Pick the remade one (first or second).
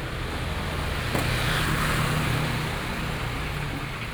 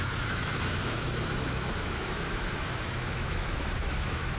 second